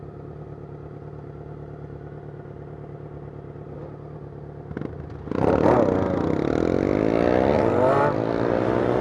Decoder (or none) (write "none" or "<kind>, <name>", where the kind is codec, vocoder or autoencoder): none